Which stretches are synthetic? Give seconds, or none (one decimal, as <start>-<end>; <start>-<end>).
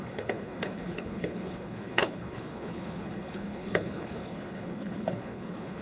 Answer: 0.0-5.8